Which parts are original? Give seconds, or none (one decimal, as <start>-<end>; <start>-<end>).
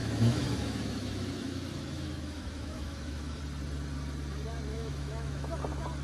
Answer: 3.4-4.7; 5.6-6.0